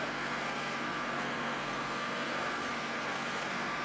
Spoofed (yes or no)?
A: yes